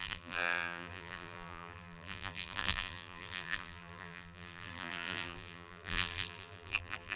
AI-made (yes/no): yes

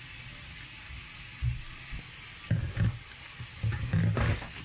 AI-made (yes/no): no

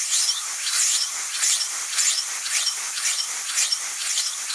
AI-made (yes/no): no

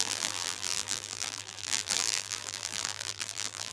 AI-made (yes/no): yes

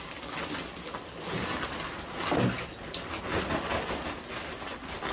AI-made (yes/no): no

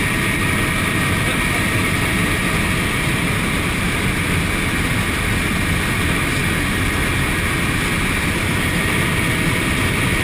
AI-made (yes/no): no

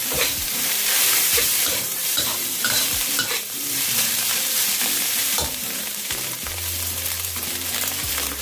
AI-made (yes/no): yes